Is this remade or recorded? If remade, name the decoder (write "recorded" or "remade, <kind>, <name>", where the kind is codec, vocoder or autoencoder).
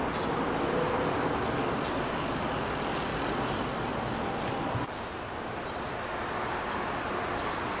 recorded